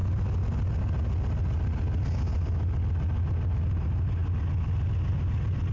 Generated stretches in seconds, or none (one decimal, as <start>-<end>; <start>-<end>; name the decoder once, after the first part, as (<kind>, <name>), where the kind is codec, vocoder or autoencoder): none